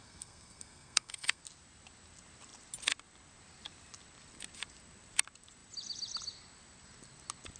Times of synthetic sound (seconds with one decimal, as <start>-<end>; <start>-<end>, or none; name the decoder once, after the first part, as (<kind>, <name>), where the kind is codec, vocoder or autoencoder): 0.0-1.4 (codec, SNAC)